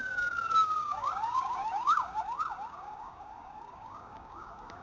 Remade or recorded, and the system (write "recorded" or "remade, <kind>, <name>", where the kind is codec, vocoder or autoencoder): remade, codec, DAC